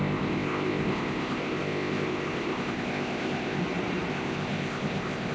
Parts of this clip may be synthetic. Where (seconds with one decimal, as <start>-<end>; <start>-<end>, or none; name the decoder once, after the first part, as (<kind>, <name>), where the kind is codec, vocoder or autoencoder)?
0.0-3.6 (codec, ZipCodec); 4.1-5.3